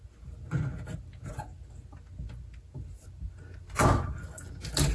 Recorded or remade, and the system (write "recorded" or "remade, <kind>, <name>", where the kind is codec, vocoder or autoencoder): recorded